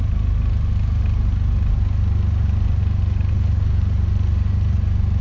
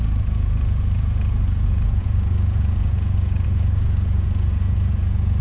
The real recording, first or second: first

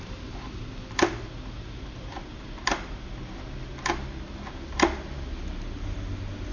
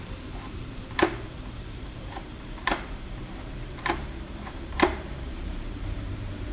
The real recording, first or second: first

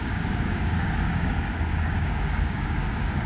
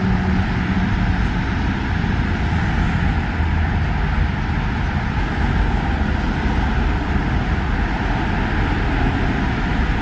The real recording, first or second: second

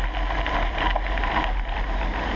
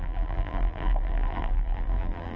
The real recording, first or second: first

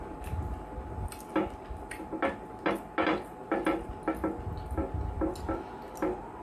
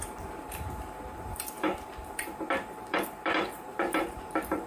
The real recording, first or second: first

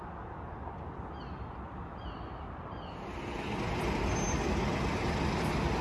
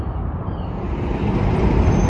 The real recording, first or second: first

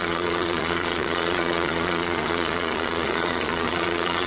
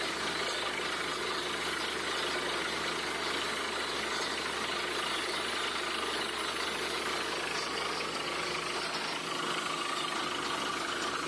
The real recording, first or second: second